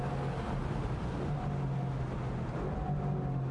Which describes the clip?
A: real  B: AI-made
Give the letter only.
A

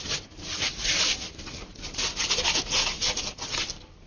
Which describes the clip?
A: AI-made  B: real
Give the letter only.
B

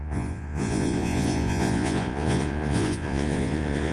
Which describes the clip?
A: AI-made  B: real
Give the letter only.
A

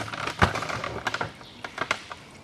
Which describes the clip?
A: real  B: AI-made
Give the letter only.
A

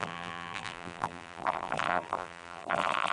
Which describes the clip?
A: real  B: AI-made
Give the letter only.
B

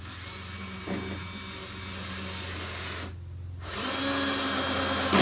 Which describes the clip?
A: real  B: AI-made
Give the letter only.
A